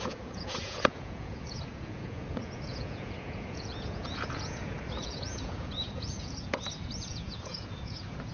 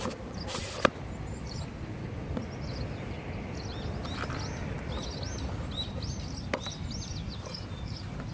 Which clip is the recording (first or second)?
second